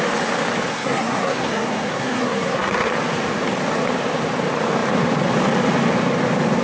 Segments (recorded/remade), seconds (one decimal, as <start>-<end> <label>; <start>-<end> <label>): 0.0-0.7 recorded; 0.7-2.9 remade; 2.9-6.6 recorded